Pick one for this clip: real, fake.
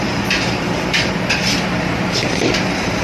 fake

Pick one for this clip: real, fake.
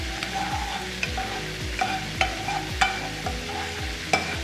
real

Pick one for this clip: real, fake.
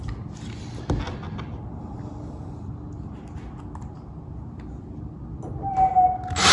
real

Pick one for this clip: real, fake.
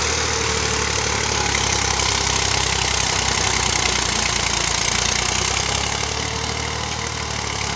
real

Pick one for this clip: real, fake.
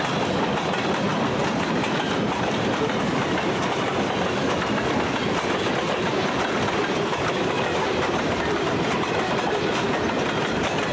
fake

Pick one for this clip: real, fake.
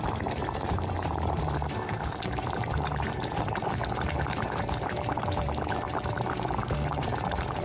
fake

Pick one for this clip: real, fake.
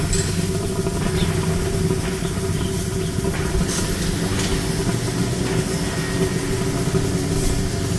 real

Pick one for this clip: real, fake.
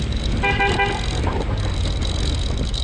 real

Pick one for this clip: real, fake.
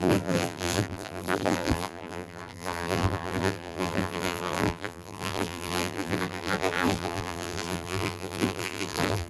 fake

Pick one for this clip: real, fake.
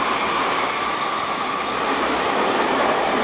real